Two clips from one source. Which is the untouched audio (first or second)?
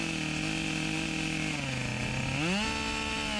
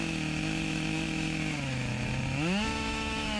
first